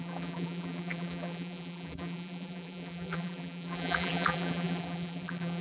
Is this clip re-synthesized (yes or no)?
yes